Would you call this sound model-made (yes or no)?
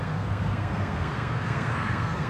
yes